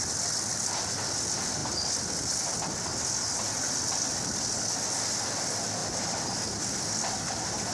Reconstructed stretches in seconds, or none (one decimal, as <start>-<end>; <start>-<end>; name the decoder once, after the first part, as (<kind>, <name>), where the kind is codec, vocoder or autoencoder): 5.8-6.9 (vocoder, BigVGAN v2)